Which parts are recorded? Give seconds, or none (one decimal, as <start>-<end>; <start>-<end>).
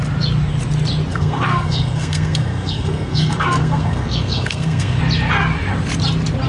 0.0-1.1; 5.0-6.5